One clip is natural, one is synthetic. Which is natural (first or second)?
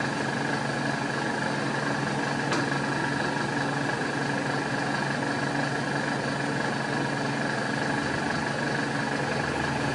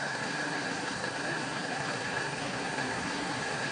first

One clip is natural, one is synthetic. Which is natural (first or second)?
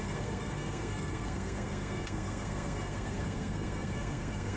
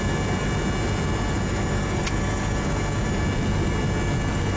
second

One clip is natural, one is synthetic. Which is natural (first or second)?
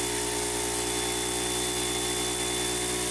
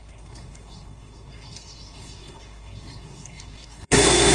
first